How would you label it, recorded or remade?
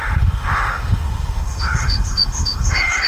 remade